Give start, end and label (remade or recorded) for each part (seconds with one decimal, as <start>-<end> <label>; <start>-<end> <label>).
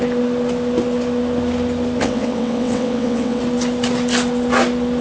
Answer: 0.0-2.0 recorded; 2.0-3.4 remade; 3.4-5.0 recorded